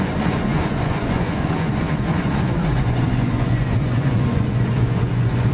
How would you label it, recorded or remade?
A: remade